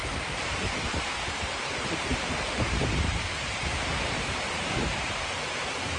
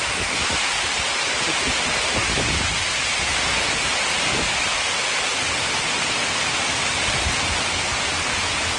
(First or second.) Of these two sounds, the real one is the second